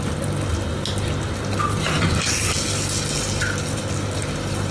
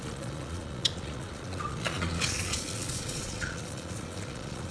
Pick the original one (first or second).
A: first